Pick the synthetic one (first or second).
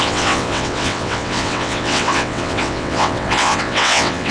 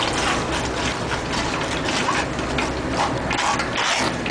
first